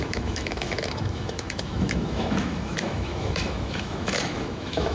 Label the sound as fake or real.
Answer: fake